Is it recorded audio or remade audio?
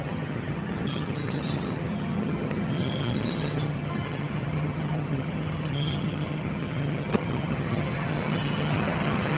remade